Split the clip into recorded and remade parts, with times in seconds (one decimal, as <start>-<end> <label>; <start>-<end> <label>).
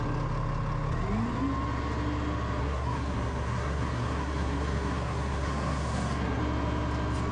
0.0-2.6 recorded; 2.6-6.4 remade; 6.4-7.3 recorded